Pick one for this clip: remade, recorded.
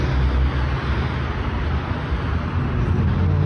recorded